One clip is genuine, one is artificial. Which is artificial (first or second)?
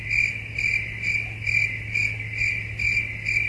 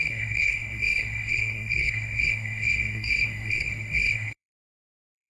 second